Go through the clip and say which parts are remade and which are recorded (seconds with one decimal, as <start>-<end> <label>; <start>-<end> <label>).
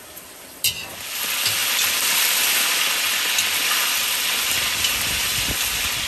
0.0-6.1 recorded